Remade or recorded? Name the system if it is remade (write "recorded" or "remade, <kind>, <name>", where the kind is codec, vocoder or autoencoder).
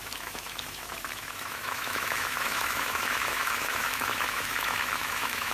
remade, autoencoder, DAC-VAE